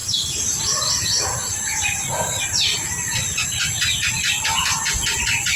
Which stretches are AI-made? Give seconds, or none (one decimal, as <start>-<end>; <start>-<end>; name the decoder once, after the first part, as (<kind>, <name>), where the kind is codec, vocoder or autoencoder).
1.0-5.6 (vocoder, BigVGAN v2)